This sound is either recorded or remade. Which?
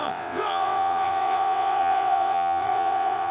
remade